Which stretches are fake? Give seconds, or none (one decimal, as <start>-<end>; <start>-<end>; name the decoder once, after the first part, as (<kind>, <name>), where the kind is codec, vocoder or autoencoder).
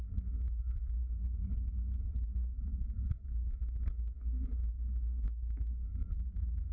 0.0-1.0 (codec, SNAC); 2.3-6.7